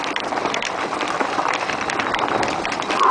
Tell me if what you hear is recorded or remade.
recorded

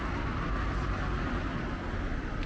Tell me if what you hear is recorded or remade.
recorded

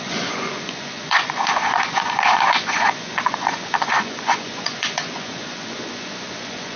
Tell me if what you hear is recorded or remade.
remade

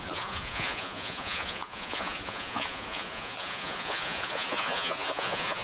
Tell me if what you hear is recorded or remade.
remade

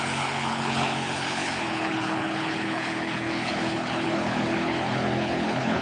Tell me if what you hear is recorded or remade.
remade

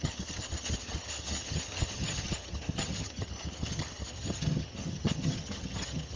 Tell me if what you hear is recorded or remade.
remade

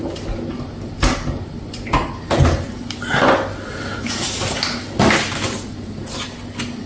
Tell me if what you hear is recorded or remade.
recorded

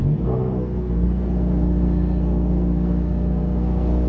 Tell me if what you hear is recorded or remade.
remade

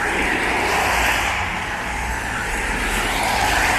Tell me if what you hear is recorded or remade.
remade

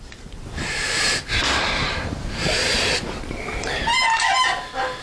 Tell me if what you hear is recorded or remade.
remade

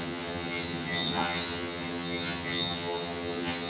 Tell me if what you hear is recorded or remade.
remade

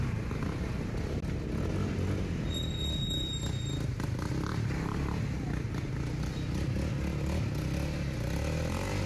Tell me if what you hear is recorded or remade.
recorded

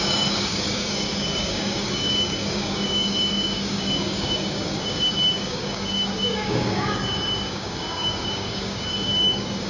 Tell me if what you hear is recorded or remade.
remade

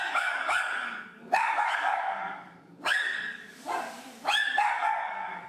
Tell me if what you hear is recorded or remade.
remade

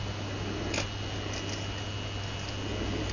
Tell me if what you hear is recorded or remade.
recorded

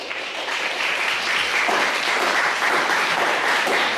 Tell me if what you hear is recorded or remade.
remade